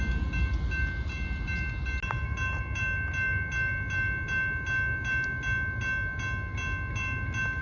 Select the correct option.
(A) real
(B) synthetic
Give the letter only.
A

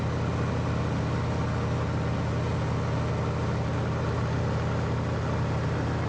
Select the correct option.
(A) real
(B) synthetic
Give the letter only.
A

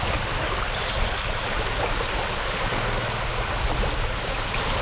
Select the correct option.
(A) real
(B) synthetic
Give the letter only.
A